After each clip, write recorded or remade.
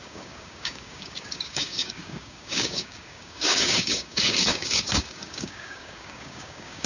remade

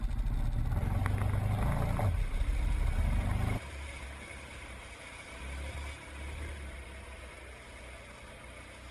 recorded